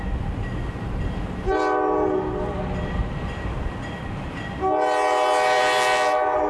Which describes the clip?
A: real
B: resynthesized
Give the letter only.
A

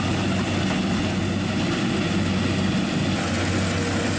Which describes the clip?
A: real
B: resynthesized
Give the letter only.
A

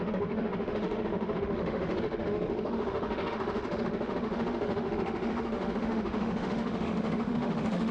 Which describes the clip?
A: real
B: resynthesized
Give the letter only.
B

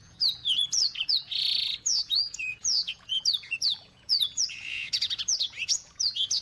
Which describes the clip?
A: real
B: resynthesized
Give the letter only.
B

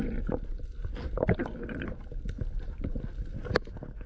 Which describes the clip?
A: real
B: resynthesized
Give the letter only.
A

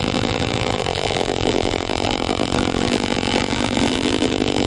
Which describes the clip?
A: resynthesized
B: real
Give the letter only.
A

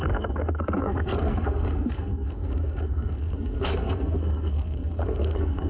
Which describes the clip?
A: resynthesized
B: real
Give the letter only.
A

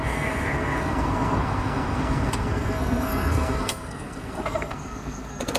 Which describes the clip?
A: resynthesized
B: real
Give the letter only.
A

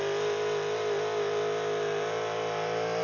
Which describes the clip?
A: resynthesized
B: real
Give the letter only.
B